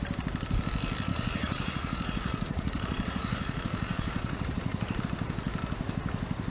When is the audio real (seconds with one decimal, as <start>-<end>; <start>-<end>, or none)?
0.0-1.1; 5.0-6.5